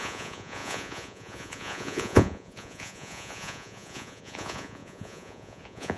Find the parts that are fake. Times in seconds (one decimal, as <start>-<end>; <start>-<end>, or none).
0.0-6.0